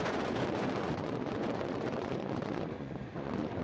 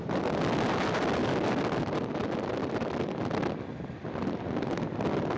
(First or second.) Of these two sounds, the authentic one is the second